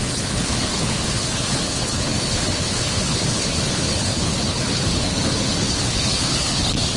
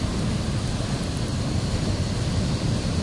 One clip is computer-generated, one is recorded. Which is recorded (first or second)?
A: second